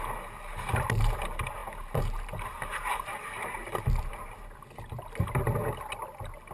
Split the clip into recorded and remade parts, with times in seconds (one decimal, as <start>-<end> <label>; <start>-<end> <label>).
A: 0.0-6.5 recorded

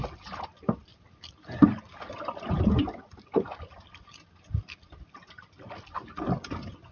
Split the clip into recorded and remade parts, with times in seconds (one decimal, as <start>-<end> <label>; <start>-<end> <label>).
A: 0.0-6.9 recorded